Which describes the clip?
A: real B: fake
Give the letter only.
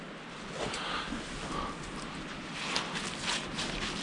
A